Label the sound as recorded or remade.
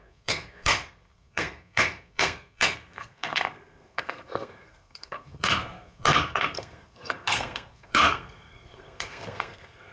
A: remade